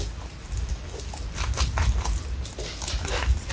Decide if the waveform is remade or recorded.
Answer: recorded